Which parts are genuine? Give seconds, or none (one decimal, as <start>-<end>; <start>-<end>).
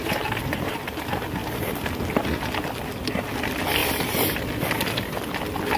0.0-5.8